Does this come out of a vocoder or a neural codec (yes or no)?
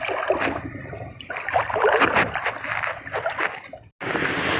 no